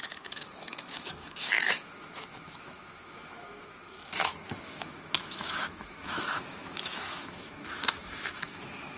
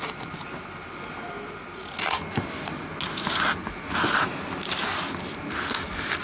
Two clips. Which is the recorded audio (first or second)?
second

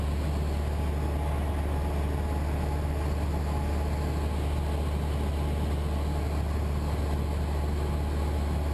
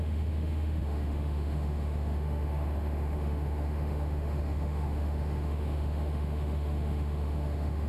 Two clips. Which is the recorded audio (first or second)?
first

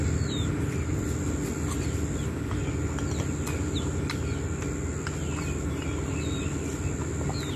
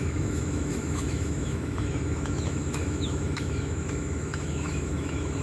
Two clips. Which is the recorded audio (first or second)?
first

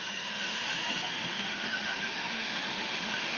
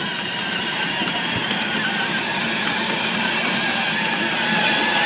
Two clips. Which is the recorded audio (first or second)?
second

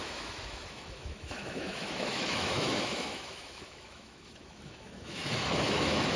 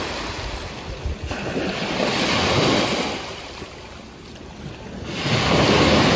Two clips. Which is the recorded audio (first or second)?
second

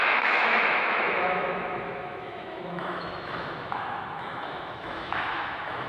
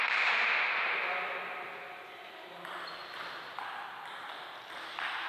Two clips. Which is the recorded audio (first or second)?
second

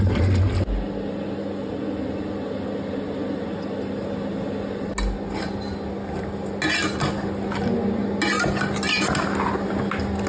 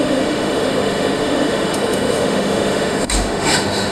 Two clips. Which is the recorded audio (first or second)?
first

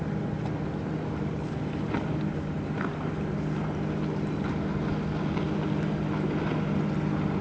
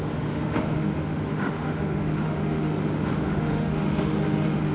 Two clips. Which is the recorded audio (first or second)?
first